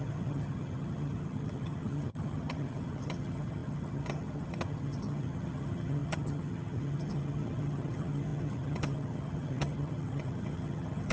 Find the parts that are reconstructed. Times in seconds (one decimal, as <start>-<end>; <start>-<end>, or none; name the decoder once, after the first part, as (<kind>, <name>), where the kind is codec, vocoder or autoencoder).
0.0-11.1 (vocoder, HiFi-GAN)

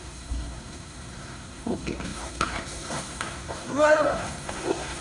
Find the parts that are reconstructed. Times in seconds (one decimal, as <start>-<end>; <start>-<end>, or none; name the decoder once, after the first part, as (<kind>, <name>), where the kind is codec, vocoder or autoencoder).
0.0-5.0 (codec, SNAC)

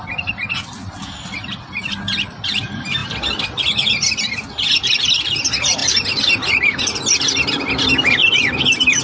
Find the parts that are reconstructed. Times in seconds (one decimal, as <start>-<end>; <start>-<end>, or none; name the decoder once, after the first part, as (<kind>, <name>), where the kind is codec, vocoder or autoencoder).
none

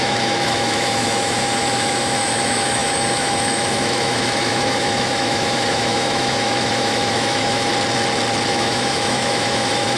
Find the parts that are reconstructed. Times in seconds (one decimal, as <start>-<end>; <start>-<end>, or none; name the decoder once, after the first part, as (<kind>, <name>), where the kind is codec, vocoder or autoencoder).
0.0-7.7 (autoencoder, DAC-VAE); 8.5-10.0

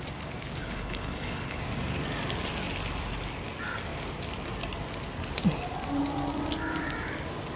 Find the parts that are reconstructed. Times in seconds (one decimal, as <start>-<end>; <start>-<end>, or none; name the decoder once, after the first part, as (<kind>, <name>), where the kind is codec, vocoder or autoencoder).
0.6-1.6 (codec, HILCodec)